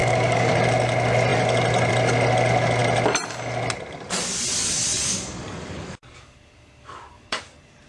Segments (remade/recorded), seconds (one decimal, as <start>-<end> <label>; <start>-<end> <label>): 0.0-0.5 remade; 0.5-4.6 recorded; 4.6-7.5 remade; 7.5-7.9 recorded